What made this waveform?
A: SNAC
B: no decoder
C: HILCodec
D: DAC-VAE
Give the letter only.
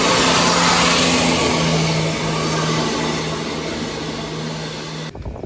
B